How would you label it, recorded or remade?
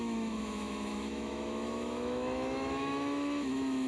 remade